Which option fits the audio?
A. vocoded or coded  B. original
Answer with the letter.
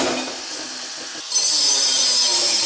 A